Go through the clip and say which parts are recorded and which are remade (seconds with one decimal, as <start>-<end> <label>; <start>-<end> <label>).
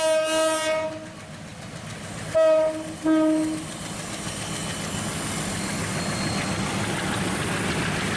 0.0-8.2 recorded